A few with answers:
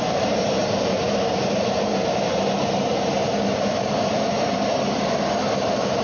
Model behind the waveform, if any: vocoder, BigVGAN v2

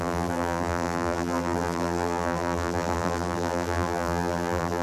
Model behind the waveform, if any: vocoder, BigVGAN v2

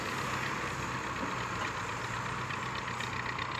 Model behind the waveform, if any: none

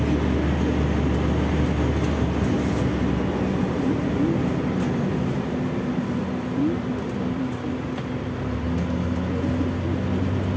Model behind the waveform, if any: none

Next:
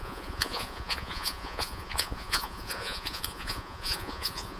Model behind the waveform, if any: vocoder, Vocos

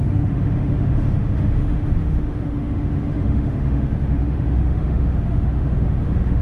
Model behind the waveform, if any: autoencoder, DAC-VAE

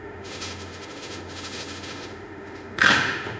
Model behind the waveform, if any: autoencoder, DAC-VAE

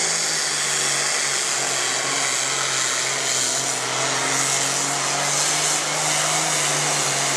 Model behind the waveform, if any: none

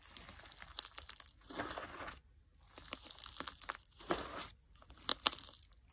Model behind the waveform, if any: none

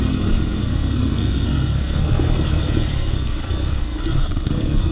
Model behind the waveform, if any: codec, SNAC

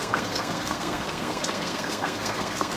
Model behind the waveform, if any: codec, SNAC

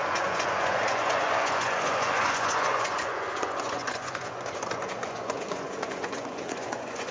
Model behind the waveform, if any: vocoder, Vocos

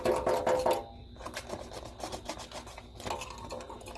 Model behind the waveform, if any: none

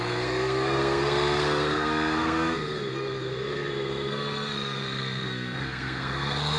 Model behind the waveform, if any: codec, SNAC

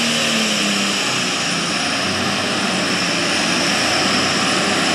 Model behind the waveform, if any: none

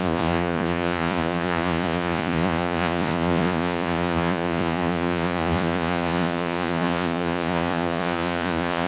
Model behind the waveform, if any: vocoder, Vocos